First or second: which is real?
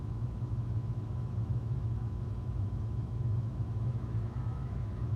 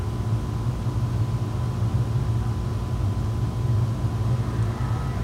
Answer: second